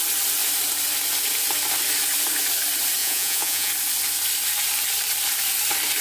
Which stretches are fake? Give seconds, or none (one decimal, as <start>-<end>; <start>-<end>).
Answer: 3.0-3.7